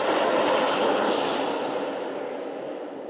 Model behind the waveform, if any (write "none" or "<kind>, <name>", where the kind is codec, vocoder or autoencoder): none